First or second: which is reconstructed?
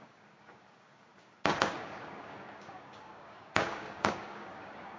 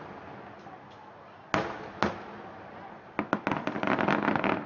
first